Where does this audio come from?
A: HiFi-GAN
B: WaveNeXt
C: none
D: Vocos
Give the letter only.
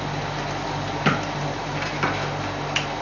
C